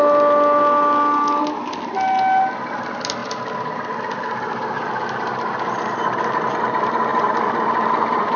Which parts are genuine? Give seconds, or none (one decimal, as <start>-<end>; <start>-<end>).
0.0-8.4